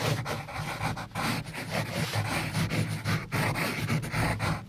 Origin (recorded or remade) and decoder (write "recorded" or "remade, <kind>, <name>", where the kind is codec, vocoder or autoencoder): recorded